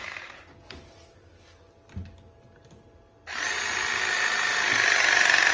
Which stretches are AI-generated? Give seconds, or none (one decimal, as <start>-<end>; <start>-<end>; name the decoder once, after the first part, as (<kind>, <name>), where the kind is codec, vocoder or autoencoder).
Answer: none

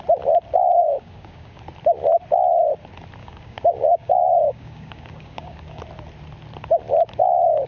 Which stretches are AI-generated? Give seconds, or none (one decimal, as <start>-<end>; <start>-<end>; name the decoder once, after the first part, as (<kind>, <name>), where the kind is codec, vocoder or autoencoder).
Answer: 0.8-1.6 (codec, DAC); 3.2-5.8